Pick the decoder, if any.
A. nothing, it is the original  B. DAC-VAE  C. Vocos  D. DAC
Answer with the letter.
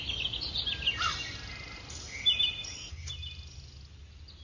A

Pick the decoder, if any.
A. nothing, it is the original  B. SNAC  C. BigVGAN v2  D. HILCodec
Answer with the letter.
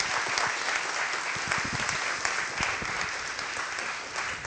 A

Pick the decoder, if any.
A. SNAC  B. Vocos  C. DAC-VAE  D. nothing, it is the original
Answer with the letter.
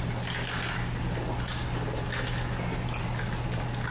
D